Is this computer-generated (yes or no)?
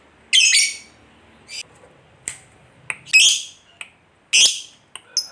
no